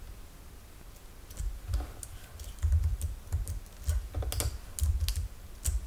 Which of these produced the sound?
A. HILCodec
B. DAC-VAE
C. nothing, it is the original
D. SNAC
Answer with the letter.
C